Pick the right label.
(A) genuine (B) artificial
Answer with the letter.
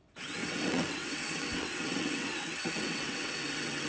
B